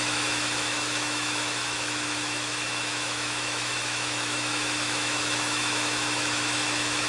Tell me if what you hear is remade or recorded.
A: remade